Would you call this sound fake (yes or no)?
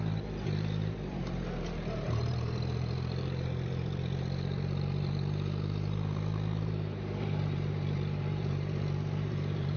yes